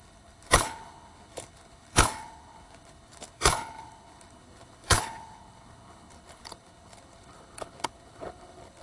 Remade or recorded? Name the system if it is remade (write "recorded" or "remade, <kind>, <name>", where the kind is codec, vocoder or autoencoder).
remade, codec, HILCodec